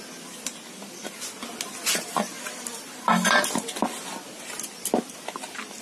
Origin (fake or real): real